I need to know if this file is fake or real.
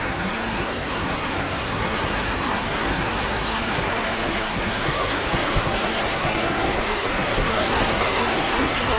fake